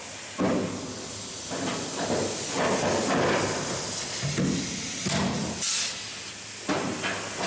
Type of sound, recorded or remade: recorded